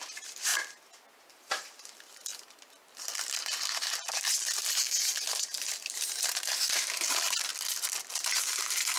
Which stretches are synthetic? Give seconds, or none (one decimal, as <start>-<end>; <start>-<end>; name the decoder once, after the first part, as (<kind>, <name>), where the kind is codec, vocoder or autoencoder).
0.0-0.5 (vocoder, BigVGAN v2); 1.3-2.3; 5.3-7.5; 8.1-9.0